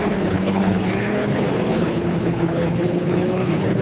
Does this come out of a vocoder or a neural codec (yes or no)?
yes